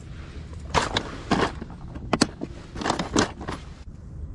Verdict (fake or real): real